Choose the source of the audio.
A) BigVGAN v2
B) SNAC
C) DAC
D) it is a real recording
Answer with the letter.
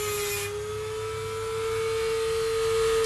D